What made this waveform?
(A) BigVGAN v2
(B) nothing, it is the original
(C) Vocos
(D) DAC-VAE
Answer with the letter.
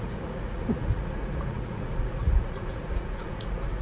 C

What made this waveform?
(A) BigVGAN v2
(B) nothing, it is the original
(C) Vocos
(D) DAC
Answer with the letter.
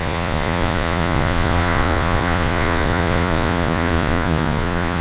C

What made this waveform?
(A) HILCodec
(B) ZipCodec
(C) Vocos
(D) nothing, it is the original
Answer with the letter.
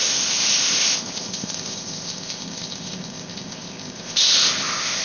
B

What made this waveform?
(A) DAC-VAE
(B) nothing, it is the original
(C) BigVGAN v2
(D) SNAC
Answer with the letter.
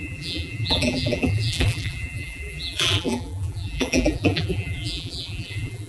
C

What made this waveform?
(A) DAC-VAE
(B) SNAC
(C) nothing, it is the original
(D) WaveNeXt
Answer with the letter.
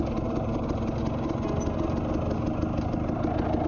C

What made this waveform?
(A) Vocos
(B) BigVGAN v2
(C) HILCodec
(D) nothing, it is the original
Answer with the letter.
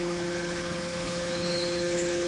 C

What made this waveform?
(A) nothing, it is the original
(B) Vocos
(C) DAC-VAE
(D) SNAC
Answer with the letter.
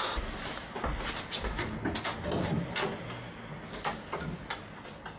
A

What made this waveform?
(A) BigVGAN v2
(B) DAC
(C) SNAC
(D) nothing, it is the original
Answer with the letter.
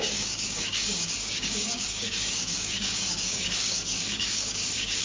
B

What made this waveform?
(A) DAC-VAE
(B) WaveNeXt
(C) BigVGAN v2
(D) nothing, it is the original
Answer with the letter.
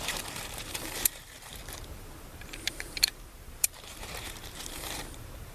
C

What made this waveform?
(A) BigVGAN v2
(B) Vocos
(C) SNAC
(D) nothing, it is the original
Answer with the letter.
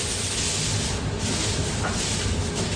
D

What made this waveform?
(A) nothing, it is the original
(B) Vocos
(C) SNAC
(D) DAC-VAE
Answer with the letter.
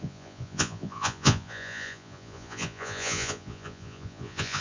B